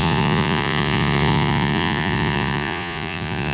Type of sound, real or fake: fake